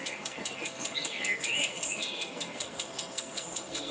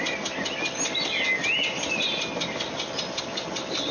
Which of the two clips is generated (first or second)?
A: first